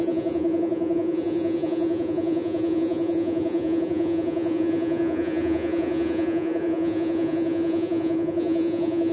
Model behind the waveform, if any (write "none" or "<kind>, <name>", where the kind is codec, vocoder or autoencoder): vocoder, Vocos